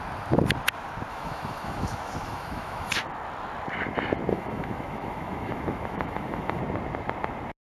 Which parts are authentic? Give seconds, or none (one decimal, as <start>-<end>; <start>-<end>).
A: 0.0-1.1; 2.9-4.3; 6.6-7.6